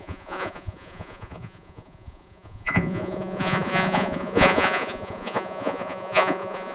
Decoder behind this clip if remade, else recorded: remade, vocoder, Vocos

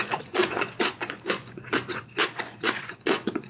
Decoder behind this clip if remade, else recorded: remade, vocoder, Vocos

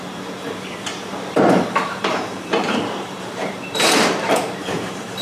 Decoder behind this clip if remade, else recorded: remade, vocoder, BigVGAN v2